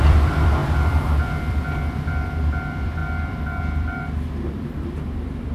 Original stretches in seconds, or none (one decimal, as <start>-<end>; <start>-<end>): none